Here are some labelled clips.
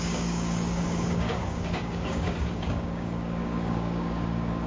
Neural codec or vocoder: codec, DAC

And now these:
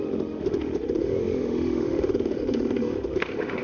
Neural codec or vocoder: autoencoder, DAC-VAE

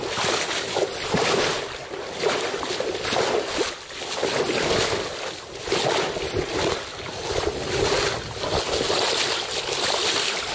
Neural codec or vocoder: none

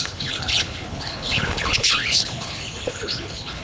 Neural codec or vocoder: codec, HILCodec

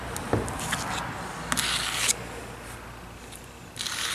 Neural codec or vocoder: none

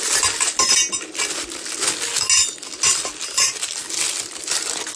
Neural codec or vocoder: none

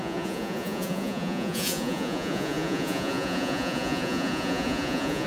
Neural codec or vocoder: vocoder, Vocos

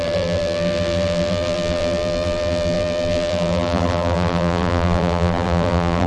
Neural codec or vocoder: vocoder, BigVGAN v2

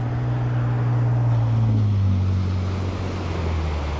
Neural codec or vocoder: none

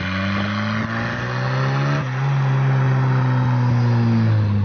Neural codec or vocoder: none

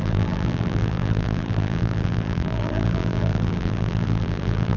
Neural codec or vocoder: vocoder, BigVGAN v2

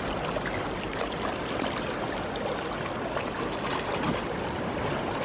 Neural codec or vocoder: none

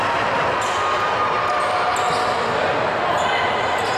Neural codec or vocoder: none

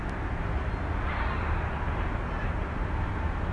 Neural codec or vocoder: none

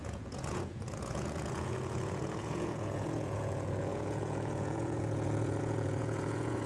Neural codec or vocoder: vocoder, Vocos